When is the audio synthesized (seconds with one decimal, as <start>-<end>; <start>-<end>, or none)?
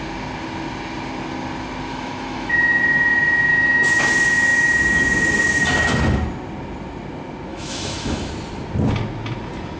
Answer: 1.9-2.8; 3.5-4.0; 7.5-8.3